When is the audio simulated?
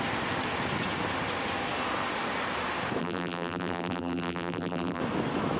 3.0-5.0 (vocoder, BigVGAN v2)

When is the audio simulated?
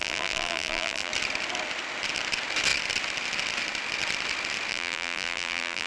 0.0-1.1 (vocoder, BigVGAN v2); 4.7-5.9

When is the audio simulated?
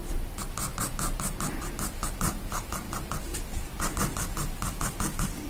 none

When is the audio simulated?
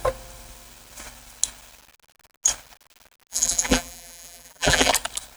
3.3-4.9 (vocoder, BigVGAN v2)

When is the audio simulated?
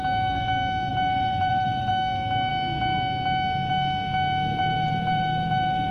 0.9-1.9 (vocoder, BigVGAN v2); 4.6-5.9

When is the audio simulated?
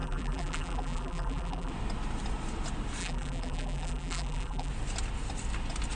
0.0-1.7 (vocoder, BigVGAN v2); 3.0-4.7